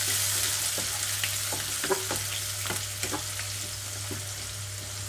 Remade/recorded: recorded